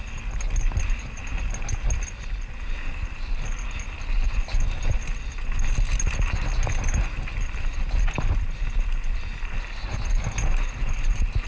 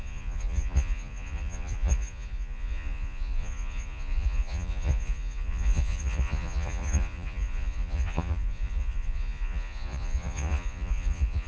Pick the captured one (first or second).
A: first